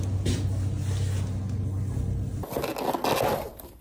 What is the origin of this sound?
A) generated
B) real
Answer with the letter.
B